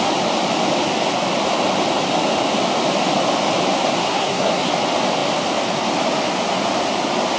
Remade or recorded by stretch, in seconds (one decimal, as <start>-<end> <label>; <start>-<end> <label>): 0.0-4.0 recorded; 4.0-4.7 remade; 4.7-7.4 recorded